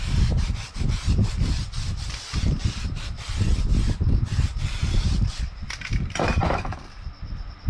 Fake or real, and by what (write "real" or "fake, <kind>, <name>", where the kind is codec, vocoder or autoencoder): fake, vocoder, BigVGAN v2